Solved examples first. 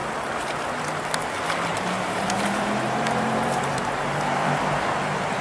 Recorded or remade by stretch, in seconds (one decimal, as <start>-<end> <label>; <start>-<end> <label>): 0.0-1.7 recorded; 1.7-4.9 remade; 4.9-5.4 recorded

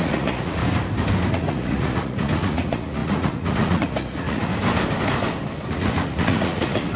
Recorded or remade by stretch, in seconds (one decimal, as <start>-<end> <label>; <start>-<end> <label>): 0.0-0.6 remade; 0.6-1.3 recorded; 1.3-4.5 remade; 4.5-5.7 recorded; 5.7-7.0 remade

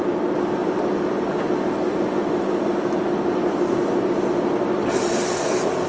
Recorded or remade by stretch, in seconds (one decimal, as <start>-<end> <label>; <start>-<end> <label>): 0.0-5.9 recorded

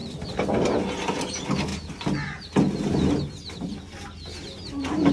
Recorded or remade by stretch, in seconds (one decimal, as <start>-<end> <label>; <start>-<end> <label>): 0.0-5.1 recorded

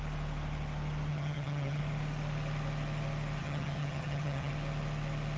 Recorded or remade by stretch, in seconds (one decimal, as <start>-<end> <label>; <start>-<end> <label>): 0.0-1.1 recorded; 1.1-1.8 remade; 1.8-3.4 recorded; 3.4-4.5 remade; 4.5-5.4 recorded

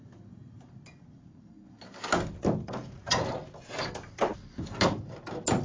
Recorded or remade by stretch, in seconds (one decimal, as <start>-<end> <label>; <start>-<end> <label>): 0.0-5.6 recorded

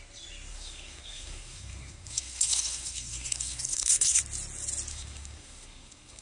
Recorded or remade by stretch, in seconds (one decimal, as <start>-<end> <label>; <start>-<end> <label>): 0.0-0.5 recorded; 0.5-4.2 remade; 4.2-4.9 recorded; 4.9-6.2 remade